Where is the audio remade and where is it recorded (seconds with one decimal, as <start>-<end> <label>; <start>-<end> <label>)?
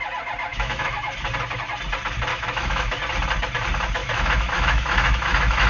0.0-0.5 recorded; 0.5-1.1 remade; 1.1-2.3 recorded; 2.3-3.0 remade; 3.0-4.0 recorded; 4.0-5.7 remade